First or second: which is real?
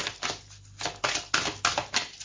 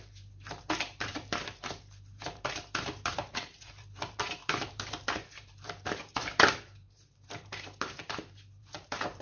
first